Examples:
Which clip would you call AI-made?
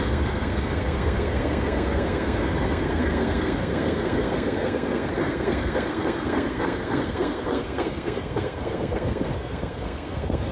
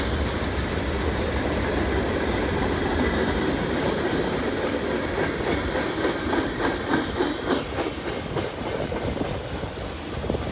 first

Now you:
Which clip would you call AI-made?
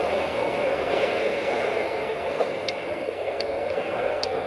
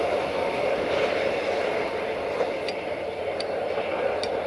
first